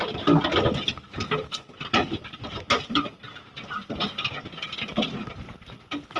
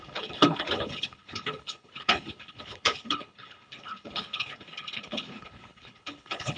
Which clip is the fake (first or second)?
second